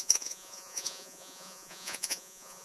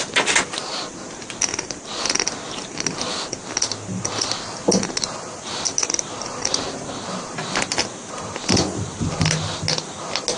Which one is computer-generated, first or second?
first